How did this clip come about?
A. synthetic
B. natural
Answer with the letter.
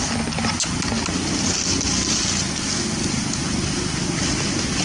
B